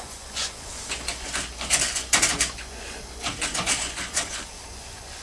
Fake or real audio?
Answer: fake